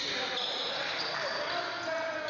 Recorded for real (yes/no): yes